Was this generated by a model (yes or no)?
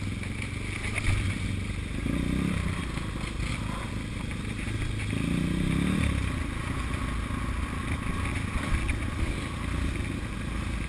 no